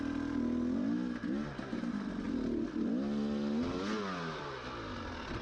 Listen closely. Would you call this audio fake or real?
real